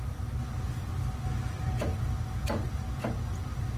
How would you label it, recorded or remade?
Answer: recorded